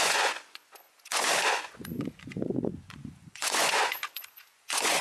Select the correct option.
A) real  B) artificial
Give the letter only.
B